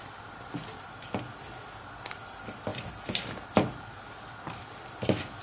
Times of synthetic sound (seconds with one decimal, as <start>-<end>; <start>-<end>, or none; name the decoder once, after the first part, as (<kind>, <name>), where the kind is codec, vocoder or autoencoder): none